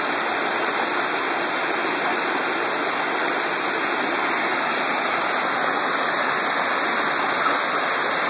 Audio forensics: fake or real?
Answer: real